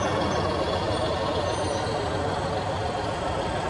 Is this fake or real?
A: real